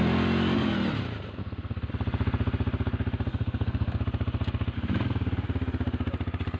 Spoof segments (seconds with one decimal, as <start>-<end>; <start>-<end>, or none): 1.4-1.9; 3.3-4.0